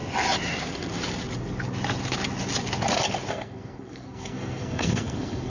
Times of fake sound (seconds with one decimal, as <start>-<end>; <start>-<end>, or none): 3.3-5.5